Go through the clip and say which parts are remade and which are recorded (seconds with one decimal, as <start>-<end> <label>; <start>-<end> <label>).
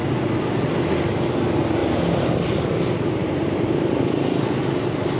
0.0-0.8 remade; 0.8-3.2 recorded; 3.2-4.0 remade; 4.0-5.2 recorded